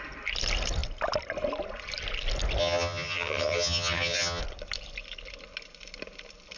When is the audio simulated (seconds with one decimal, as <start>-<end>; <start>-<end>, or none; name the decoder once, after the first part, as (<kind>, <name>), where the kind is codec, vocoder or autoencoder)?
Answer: 2.6-4.4 (vocoder, HiFi-GAN)